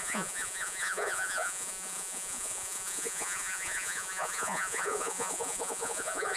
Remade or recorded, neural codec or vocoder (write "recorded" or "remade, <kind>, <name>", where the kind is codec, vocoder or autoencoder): remade, vocoder, Vocos